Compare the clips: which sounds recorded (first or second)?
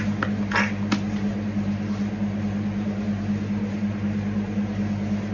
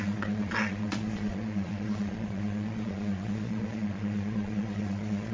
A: first